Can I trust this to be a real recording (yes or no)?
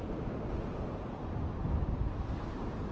yes